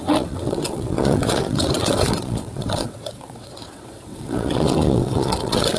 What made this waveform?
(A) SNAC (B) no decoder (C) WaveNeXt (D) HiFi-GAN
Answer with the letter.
C